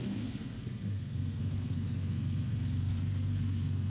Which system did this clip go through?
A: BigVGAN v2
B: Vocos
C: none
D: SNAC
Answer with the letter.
D